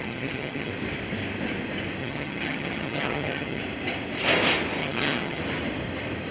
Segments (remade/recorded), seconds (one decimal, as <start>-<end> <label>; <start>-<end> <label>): 0.0-0.7 remade; 0.7-2.0 recorded; 2.0-3.6 remade; 3.6-4.8 recorded; 4.8-5.4 remade; 5.4-6.3 recorded